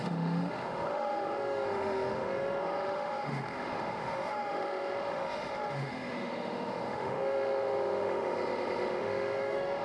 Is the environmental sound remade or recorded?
remade